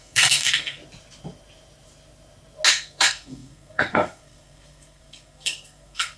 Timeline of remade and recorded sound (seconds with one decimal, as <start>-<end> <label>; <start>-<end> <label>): 0.0-0.8 remade; 0.8-2.7 recorded; 2.7-6.2 remade